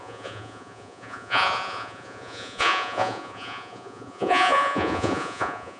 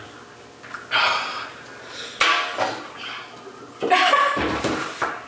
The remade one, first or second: first